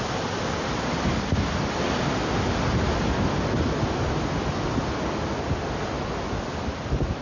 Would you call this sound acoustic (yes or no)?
yes